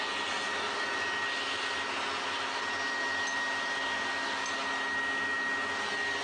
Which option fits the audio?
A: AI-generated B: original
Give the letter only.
B